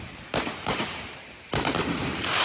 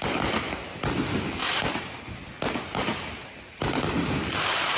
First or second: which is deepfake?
first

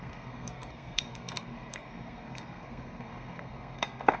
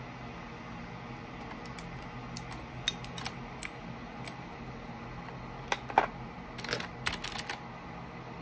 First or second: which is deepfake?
first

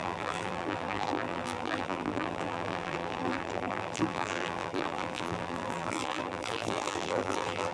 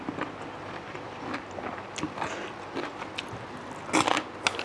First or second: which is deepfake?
first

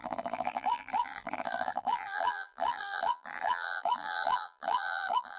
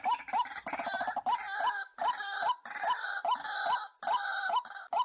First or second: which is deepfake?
first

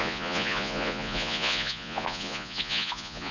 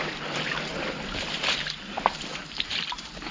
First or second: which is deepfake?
first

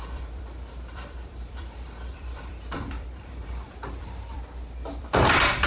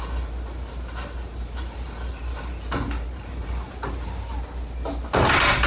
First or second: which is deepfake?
first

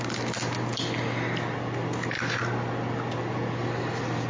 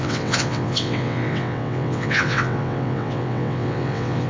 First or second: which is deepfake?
second